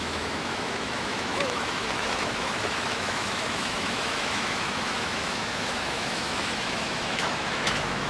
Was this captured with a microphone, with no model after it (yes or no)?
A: no